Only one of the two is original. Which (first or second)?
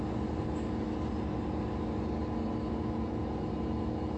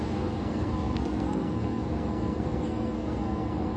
first